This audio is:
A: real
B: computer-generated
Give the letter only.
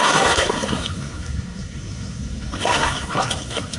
B